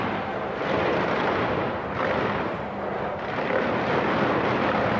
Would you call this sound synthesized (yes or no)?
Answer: yes